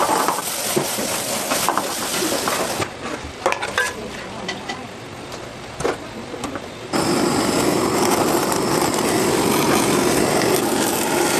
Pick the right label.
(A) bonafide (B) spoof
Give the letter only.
B